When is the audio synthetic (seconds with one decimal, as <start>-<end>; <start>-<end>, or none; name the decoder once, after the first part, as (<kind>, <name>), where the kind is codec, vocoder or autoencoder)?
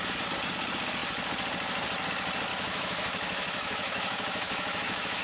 2.5-5.2 (autoencoder, DAC-VAE)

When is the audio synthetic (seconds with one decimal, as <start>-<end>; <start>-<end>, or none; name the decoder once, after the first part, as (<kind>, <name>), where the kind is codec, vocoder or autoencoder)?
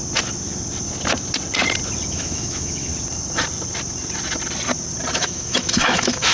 2.1-2.9 (autoencoder, DAC-VAE); 5.1-6.3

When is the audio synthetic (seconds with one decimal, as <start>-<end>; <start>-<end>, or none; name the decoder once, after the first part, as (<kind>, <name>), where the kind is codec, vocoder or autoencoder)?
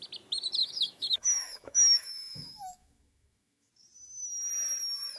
0.6-3.7 (autoencoder, DAC-VAE)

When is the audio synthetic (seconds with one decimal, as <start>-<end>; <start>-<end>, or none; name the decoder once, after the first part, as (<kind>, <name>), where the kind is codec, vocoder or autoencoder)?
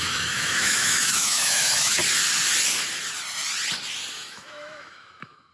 0.0-2.0 (autoencoder, DAC-VAE); 4.1-5.5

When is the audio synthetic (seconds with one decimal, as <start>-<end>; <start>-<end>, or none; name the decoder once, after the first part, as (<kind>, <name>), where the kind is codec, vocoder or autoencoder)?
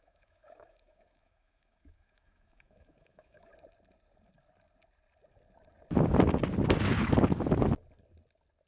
0.0-3.5 (autoencoder, DAC-VAE)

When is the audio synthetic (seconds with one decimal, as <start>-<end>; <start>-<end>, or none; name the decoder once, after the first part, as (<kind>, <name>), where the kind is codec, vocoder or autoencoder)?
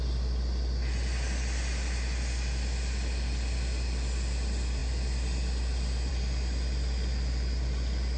none